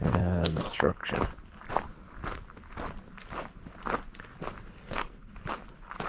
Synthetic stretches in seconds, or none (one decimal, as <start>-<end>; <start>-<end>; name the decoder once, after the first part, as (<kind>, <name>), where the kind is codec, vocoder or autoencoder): 0.0-1.0 (codec, SNAC); 4.7-5.3